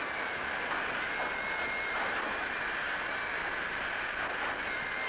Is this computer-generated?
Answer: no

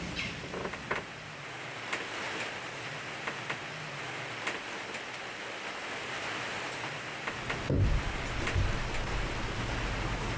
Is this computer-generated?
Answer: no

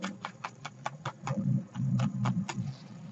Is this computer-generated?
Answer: yes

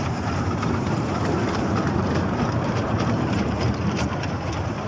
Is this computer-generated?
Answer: yes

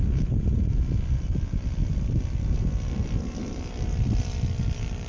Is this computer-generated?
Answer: no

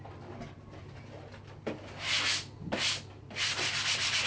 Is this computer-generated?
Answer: no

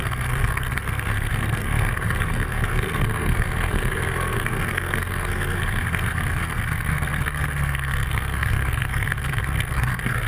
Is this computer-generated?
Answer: yes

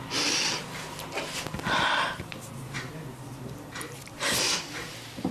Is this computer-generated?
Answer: yes